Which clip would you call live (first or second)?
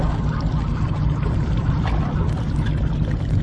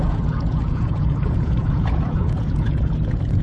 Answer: first